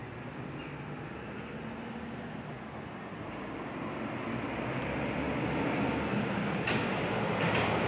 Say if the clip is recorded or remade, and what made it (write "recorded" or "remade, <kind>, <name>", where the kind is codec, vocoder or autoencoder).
recorded